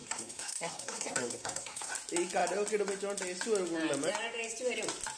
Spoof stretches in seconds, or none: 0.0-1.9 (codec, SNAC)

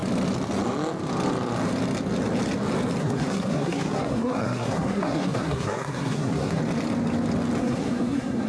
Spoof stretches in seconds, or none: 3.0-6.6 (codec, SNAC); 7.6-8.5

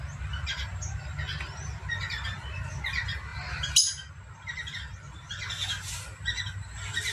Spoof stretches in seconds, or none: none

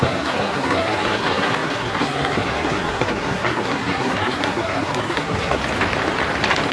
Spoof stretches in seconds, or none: 0.0-5.6 (codec, SNAC)